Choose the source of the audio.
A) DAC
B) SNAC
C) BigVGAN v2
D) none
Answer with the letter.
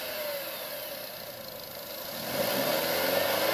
D